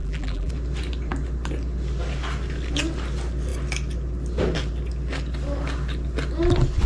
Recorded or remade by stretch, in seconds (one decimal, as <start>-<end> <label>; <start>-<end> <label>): 0.0-0.5 remade; 0.5-6.9 recorded